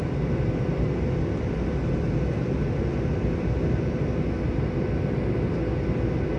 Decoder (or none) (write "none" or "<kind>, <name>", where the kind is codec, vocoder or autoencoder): none